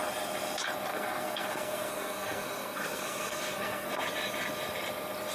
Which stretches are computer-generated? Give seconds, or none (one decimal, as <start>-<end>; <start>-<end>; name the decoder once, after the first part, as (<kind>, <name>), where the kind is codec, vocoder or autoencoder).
0.9-3.9 (codec, SNAC)